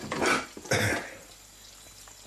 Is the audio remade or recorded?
recorded